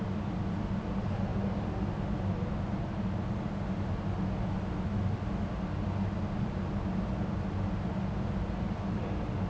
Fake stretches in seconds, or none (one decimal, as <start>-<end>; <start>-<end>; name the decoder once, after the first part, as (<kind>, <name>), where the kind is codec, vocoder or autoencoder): none